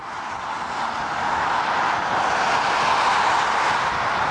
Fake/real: real